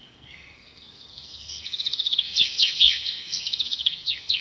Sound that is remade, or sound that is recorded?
remade